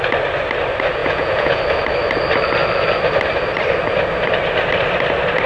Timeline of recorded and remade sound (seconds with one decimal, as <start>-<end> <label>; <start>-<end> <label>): 0.0-1.0 recorded; 1.0-1.6 remade; 1.6-5.5 recorded